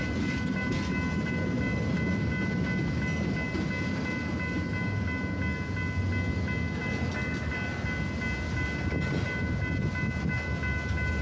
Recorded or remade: recorded